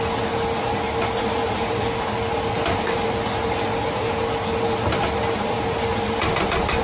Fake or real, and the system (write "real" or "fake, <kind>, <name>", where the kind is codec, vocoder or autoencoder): real